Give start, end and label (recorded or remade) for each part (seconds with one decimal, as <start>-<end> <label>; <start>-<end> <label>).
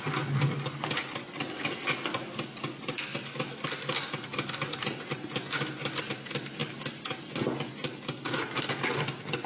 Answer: 0.0-9.5 recorded